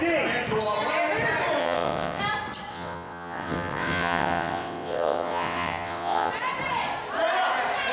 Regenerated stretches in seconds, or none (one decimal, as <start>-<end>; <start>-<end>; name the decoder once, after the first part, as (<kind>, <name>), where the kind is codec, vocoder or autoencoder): 1.6-2.2 (vocoder, WaveNeXt); 2.7-6.3